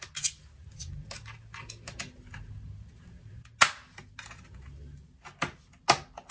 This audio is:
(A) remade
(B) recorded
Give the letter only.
B